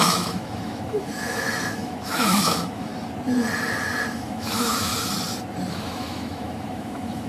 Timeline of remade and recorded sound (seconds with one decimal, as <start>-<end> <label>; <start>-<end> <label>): 0.0-2.9 remade; 2.9-4.1 recorded; 4.1-4.9 remade; 4.9-5.7 recorded; 5.7-7.3 remade